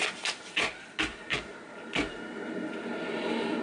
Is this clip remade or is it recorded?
recorded